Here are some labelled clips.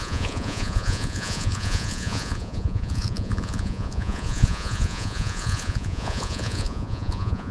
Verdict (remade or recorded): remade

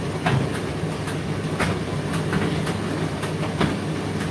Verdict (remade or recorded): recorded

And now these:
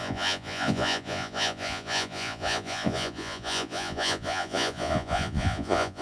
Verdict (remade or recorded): remade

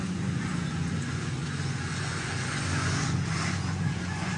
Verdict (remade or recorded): remade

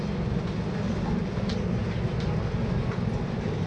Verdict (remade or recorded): recorded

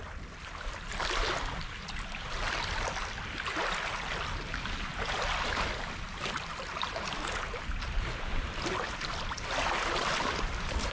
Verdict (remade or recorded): recorded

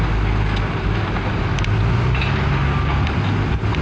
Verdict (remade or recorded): recorded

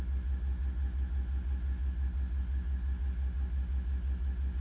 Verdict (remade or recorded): recorded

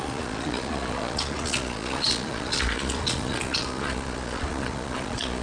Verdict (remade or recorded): remade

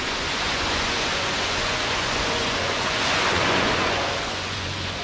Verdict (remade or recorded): remade